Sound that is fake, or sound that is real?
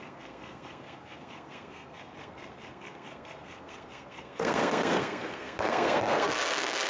fake